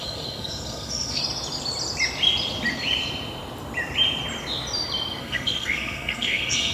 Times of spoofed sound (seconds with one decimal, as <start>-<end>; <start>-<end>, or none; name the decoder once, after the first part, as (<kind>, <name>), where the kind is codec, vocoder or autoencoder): 0.0-1.2 (codec, SNAC); 5.2-6.7